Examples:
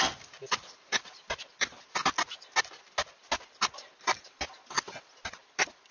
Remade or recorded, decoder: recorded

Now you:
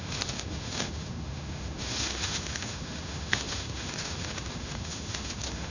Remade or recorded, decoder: remade, autoencoder, DAC-VAE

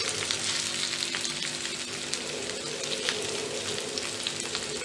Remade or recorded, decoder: recorded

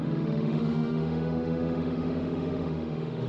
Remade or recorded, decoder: remade, autoencoder, DAC-VAE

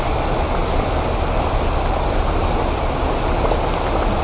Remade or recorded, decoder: recorded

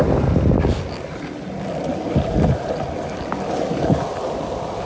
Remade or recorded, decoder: recorded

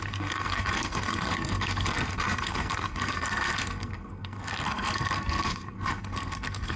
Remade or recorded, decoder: remade, codec, SNAC